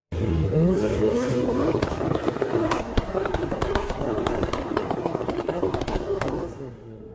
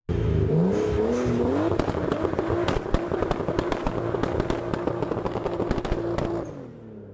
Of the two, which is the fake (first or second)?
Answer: first